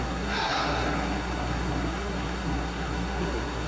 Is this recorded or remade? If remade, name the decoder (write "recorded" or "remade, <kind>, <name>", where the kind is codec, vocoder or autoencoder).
remade, codec, SNAC